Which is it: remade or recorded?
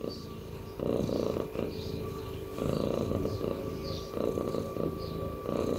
recorded